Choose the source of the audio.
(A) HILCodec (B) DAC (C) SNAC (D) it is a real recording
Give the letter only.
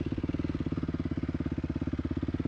D